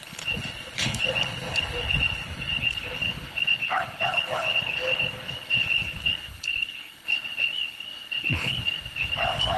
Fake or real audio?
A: fake